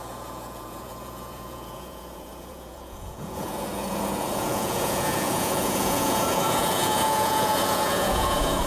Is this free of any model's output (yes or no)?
no